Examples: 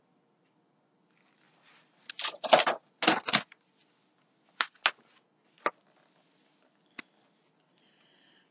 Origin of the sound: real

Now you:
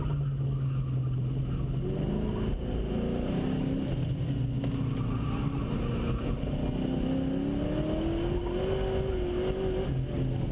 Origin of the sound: real